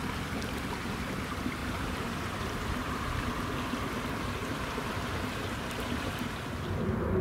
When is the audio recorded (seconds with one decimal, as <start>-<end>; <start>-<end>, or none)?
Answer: 0.0-1.6; 2.9-4.4; 5.4-7.2